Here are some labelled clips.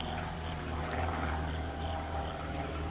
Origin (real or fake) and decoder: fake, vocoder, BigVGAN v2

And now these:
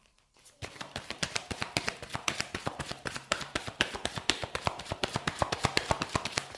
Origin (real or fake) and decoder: fake, vocoder, BigVGAN v2